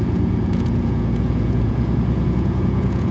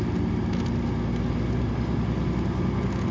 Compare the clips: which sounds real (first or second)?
second